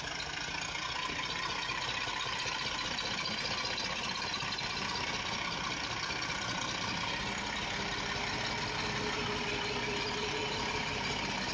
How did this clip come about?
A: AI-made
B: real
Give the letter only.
B